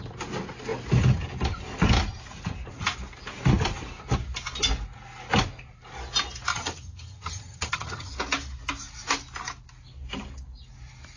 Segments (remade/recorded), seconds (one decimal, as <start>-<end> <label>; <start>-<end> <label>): 0.0-6.5 recorded; 6.5-8.1 remade; 8.1-11.2 recorded